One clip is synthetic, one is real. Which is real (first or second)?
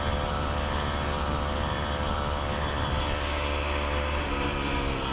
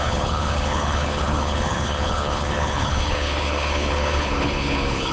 first